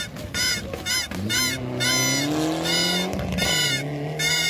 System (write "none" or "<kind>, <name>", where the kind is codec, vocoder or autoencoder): none